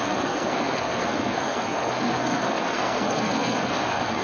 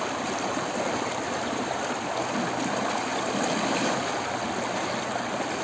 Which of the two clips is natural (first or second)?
second